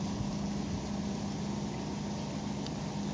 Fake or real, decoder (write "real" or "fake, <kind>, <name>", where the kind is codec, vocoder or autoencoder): real